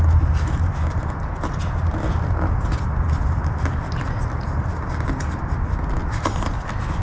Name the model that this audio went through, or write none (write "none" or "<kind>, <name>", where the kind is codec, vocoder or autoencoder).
none